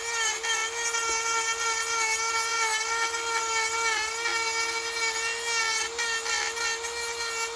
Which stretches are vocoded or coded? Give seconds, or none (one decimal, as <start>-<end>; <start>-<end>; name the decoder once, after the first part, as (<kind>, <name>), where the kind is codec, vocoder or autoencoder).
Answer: none